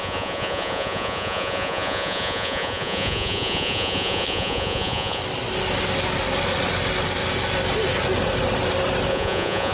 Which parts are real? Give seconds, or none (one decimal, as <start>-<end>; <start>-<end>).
5.2-9.1